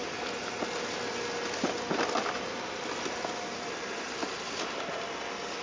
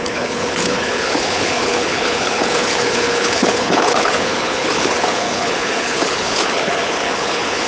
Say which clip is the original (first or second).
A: first